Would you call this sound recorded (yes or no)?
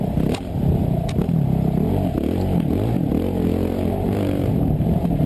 no